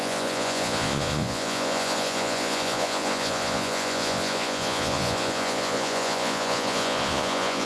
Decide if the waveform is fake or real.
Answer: fake